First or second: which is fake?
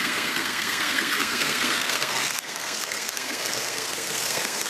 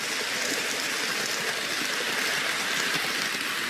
first